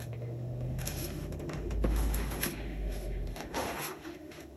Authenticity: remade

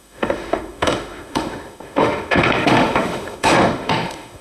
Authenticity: remade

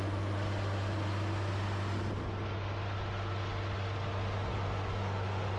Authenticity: recorded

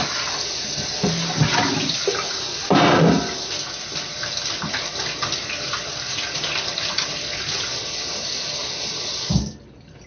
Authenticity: recorded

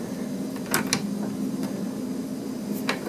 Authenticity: recorded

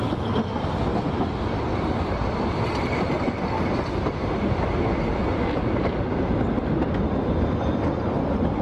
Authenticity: recorded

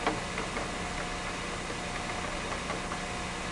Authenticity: recorded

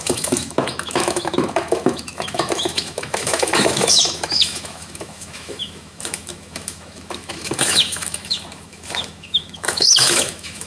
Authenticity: remade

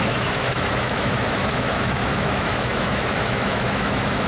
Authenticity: remade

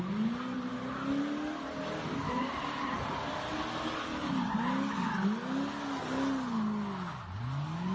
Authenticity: recorded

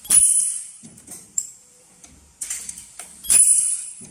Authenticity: recorded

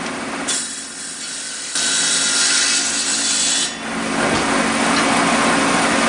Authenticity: recorded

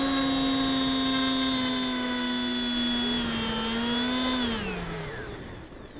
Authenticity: recorded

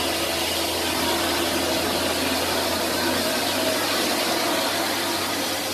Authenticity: recorded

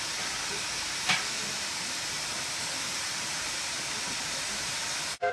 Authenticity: recorded